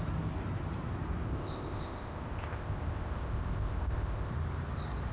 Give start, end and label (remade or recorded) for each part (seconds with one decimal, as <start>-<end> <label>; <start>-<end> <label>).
0.0-1.2 recorded; 1.2-4.3 remade; 4.3-5.1 recorded